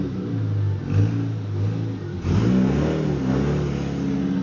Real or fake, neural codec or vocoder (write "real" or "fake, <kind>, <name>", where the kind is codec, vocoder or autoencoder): real